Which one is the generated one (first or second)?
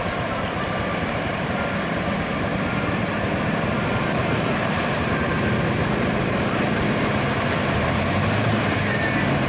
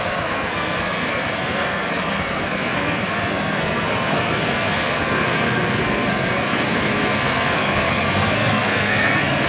second